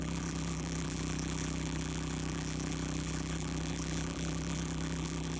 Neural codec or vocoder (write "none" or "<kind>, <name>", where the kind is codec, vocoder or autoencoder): vocoder, BigVGAN v2